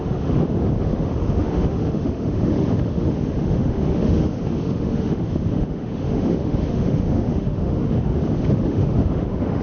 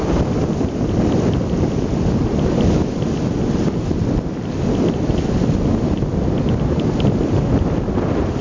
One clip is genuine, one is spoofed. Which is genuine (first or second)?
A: second